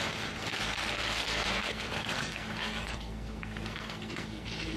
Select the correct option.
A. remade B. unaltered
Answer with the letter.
A